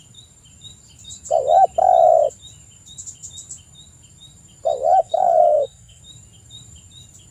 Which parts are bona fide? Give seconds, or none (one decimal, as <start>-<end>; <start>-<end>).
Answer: 0.0-5.0; 6.0-7.3

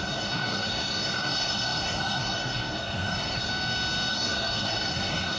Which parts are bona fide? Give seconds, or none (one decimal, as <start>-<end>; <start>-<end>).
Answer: 3.5-4.1

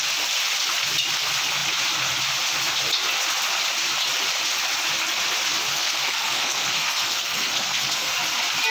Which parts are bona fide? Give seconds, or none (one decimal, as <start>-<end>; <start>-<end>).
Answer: 0.0-5.7; 8.1-8.7